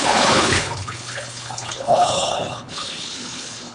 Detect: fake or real fake